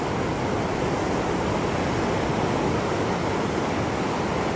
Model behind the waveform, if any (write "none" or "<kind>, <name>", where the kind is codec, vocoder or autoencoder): none